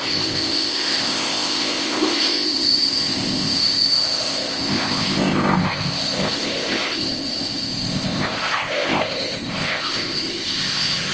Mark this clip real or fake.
fake